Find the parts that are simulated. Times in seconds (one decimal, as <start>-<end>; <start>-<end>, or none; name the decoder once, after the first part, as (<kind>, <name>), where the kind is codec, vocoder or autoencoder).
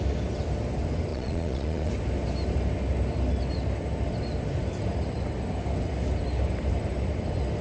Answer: 1.1-1.9 (vocoder, Vocos)